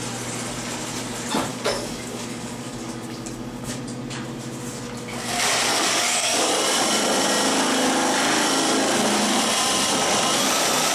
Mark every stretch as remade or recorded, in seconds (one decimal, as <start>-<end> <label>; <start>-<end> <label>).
0.0-1.5 recorded; 1.5-3.8 remade; 3.8-5.7 recorded; 5.7-6.5 remade; 6.5-10.9 recorded